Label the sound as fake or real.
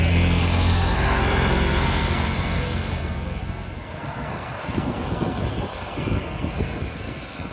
fake